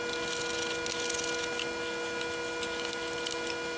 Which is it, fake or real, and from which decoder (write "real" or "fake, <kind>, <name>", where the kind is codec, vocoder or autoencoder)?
real